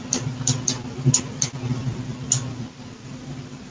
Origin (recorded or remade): recorded